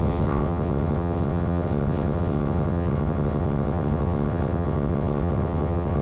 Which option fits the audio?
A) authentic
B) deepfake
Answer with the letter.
B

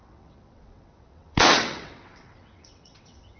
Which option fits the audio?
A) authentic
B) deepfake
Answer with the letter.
B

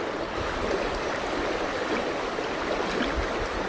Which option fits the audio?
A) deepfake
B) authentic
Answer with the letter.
B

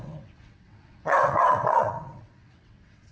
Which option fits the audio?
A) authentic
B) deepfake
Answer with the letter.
B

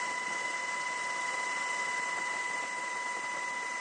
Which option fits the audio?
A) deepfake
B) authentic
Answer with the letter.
B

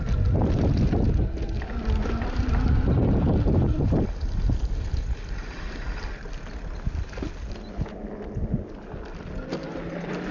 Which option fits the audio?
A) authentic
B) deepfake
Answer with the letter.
A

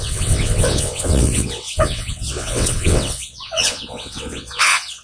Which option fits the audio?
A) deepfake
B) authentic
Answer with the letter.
A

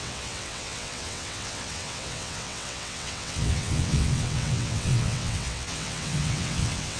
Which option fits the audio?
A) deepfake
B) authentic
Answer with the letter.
A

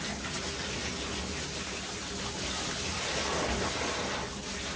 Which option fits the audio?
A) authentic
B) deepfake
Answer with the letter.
A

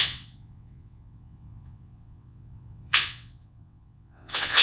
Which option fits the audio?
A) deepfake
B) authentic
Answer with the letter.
A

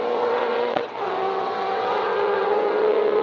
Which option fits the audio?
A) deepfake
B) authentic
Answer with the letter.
A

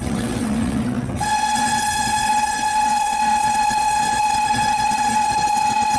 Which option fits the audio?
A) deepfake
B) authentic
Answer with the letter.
A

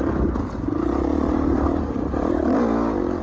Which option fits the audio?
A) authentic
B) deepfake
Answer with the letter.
A